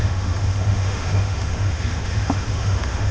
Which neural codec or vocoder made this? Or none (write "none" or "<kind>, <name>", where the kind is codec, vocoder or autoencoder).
autoencoder, DAC-VAE